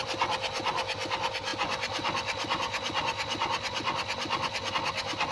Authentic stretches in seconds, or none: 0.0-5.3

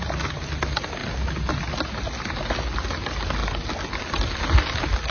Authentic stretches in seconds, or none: 0.0-5.1